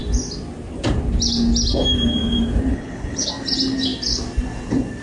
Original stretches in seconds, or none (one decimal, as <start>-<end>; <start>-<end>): 0.0-2.7; 3.3-5.0